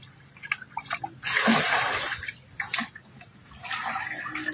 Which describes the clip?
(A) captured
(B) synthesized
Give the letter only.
A